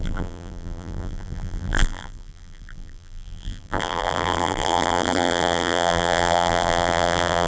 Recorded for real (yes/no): no